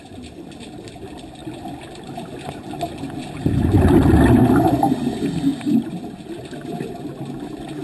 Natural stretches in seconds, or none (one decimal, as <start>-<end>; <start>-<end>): 0.0-7.8